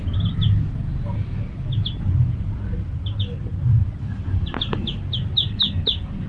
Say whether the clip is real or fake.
real